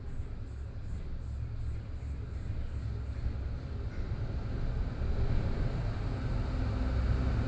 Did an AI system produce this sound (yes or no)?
no